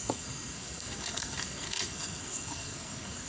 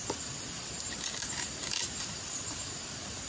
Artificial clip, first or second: first